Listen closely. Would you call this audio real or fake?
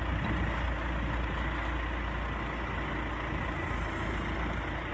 real